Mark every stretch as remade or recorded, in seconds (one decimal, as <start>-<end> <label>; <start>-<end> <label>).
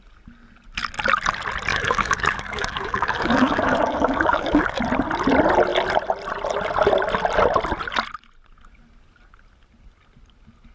0.0-1.7 recorded; 1.7-4.8 remade; 4.8-10.7 recorded